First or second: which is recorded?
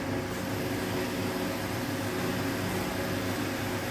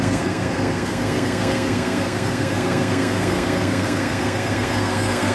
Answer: first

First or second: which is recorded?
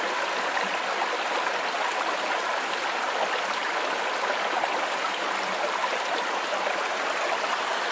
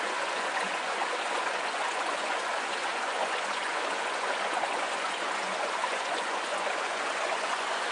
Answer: first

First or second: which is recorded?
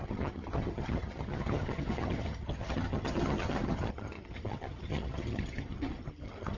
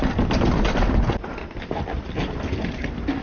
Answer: second